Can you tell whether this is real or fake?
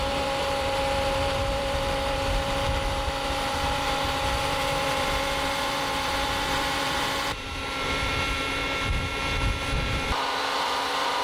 fake